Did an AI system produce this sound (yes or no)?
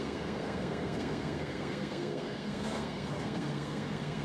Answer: yes